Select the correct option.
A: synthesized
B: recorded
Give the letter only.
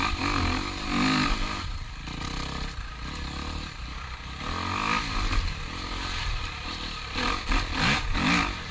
B